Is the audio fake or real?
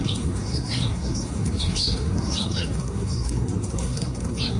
fake